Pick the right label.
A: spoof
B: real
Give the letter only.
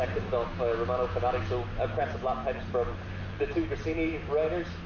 B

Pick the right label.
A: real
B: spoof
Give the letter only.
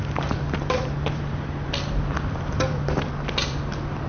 B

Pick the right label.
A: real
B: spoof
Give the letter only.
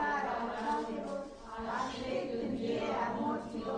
A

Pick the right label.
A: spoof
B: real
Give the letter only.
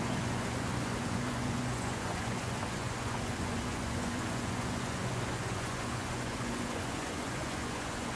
A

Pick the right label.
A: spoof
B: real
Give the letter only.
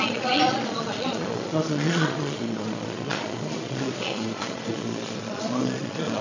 A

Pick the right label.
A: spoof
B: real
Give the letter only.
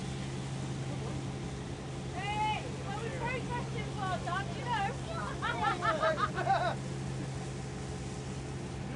B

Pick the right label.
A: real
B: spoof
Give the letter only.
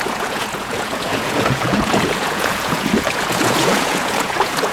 B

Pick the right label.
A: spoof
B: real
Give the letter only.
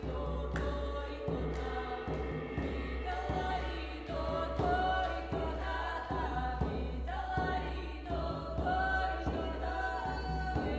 B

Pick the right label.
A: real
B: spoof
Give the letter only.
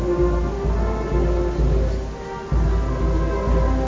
A